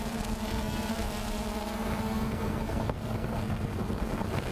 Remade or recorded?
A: remade